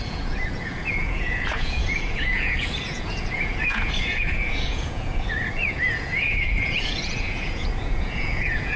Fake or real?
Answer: fake